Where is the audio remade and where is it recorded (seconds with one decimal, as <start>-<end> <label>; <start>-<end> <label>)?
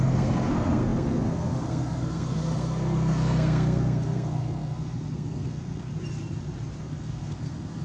0.0-5.9 remade; 5.9-6.8 recorded; 6.8-7.8 remade